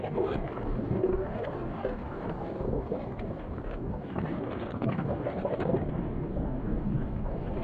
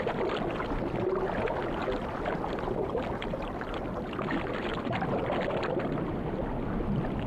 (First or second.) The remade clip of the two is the first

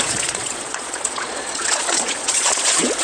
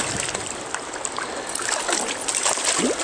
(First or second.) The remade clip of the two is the first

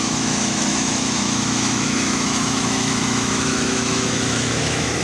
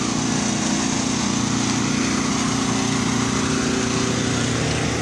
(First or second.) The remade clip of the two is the first